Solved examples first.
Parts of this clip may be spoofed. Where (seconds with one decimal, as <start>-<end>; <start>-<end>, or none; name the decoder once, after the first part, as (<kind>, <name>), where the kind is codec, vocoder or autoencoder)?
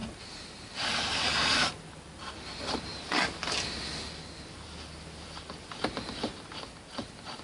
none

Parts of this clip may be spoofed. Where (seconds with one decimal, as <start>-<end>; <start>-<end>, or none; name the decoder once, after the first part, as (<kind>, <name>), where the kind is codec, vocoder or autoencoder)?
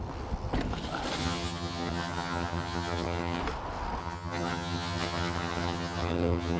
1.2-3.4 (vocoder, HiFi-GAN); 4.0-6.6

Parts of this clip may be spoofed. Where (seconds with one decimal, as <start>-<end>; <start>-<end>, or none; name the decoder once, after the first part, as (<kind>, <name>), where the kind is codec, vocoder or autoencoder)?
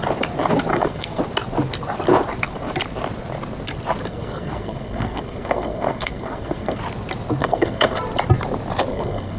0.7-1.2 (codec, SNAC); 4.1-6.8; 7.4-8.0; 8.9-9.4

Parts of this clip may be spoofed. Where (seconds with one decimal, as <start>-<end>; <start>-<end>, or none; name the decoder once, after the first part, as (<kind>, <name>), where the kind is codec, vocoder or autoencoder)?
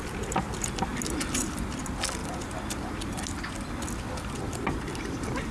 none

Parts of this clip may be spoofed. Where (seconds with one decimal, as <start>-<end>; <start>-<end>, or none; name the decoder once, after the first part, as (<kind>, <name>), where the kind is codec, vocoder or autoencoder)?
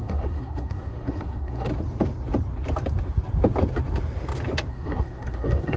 0.0-1.7 (codec, SNAC); 4.7-5.8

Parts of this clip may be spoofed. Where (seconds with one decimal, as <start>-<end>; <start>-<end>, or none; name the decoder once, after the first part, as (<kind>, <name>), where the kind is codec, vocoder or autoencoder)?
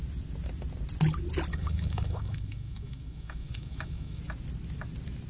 1.5-4.2 (autoencoder, DAC-VAE)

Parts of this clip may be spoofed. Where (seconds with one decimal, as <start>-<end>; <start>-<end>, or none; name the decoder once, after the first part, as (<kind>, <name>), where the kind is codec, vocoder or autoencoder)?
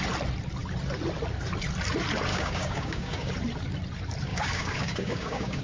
2.3-3.3 (codec, DAC); 4.3-5.6